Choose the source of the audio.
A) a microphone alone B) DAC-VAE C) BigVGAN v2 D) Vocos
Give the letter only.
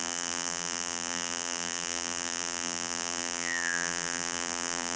C